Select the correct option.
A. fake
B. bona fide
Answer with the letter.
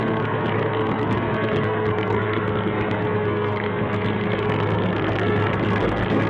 A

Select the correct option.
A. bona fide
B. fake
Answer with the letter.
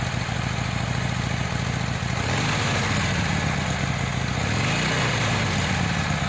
A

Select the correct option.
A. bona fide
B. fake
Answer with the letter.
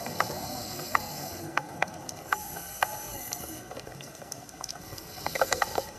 B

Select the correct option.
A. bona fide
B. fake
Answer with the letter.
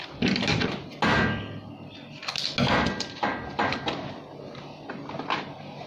A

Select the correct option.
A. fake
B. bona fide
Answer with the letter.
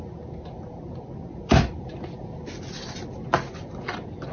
B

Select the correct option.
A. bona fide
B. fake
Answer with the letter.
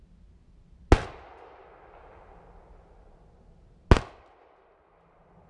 A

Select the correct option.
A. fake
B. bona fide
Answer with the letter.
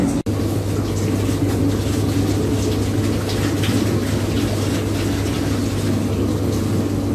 B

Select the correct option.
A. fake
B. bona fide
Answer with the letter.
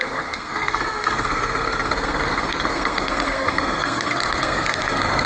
A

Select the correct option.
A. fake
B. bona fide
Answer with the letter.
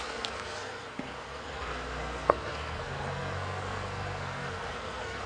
A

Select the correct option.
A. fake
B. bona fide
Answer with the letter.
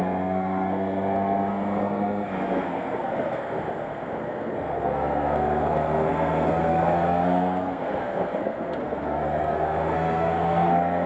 A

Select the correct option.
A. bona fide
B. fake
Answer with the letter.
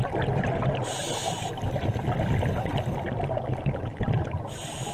A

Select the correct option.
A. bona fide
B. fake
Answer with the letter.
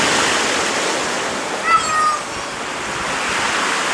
A